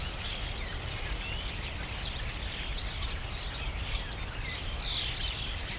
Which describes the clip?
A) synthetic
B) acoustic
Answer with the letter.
B